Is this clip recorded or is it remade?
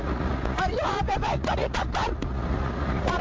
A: remade